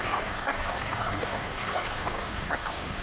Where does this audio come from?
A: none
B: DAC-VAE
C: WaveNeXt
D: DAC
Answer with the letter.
D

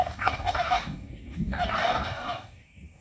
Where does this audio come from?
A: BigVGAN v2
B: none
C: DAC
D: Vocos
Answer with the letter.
C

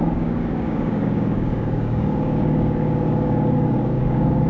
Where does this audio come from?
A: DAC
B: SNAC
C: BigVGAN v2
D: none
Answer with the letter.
A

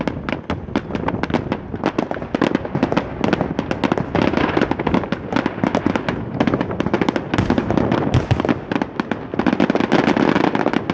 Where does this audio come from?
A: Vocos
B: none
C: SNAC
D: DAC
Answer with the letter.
B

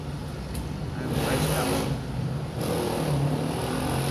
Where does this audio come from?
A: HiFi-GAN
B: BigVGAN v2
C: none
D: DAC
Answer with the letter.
C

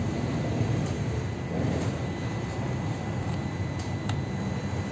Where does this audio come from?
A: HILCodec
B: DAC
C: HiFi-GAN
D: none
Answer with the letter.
D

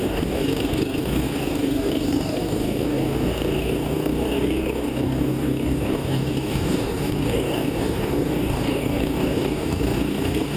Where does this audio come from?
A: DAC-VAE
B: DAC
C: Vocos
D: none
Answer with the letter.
B